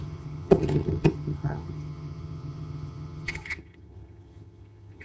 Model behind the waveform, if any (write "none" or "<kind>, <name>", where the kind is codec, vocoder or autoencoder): vocoder, HiFi-GAN